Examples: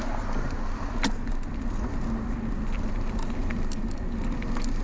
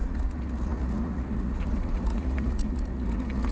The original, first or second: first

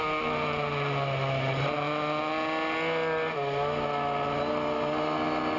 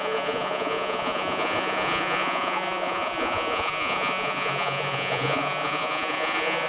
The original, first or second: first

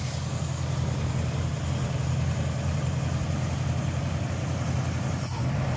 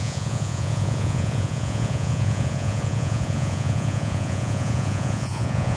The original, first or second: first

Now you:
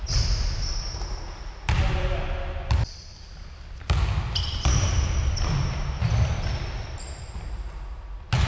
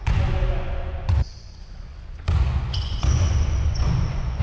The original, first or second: first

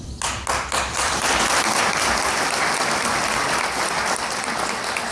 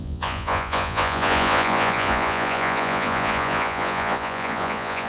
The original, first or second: first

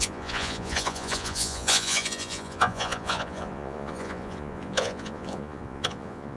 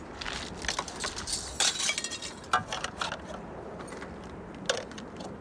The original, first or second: second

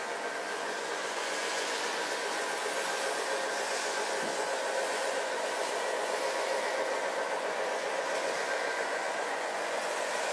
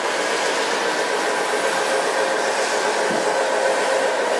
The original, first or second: second